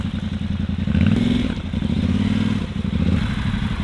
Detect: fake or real real